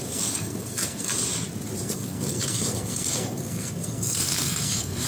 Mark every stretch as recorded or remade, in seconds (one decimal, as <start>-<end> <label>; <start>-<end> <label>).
0.0-1.1 remade; 1.1-1.8 recorded; 1.8-5.1 remade